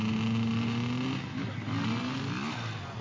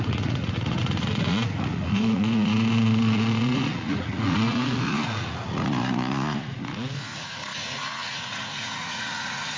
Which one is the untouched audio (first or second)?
first